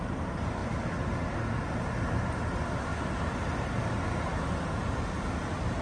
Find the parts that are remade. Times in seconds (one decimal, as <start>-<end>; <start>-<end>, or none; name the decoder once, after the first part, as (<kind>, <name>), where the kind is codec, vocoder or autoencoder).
none